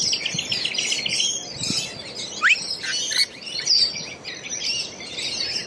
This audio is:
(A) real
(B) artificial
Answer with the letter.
A